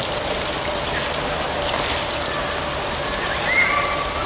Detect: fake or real real